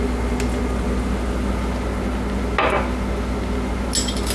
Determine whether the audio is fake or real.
real